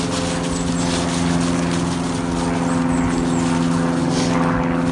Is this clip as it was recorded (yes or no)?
yes